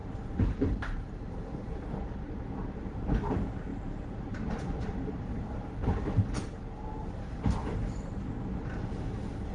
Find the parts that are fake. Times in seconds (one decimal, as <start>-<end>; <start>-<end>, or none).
0.0-1.7; 3.7-6.6; 7.0-8.3